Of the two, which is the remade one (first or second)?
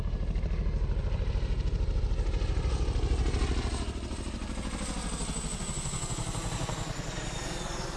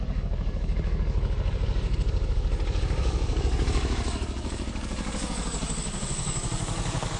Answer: second